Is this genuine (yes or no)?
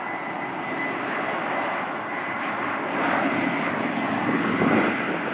yes